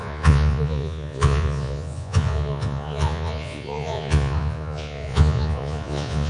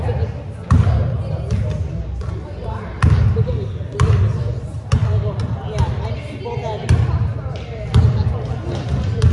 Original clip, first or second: second